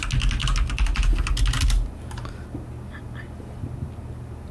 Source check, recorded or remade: recorded